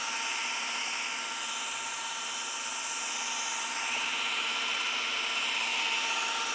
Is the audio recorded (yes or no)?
yes